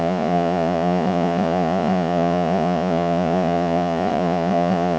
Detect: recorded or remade remade